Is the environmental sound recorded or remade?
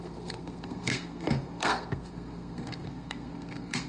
remade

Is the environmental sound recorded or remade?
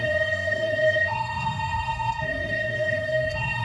remade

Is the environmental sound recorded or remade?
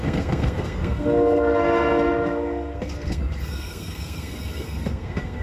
remade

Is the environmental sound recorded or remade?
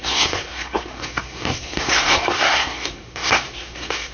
remade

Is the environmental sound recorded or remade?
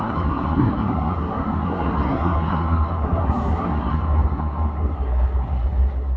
remade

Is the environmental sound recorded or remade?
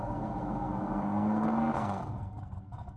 remade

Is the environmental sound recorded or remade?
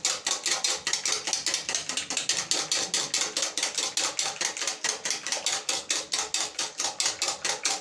recorded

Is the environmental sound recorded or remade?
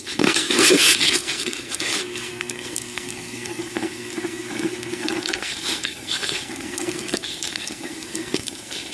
remade